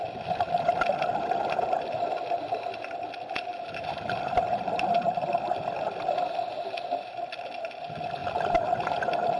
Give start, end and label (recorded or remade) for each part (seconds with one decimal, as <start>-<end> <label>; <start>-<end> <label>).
0.0-9.4 remade